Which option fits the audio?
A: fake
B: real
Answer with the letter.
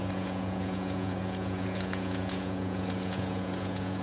A